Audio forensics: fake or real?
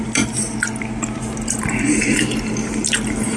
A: real